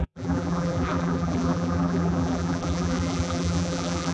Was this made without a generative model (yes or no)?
no